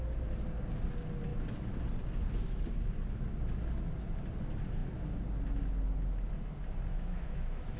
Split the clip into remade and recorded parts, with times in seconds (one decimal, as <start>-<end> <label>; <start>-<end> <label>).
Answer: 0.0-6.9 recorded; 6.9-7.8 remade